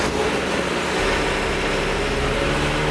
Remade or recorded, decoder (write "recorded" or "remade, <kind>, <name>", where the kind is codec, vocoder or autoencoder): recorded